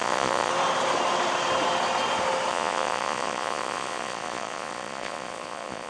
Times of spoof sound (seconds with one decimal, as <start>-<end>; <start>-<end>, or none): 0.0-0.5; 2.5-5.9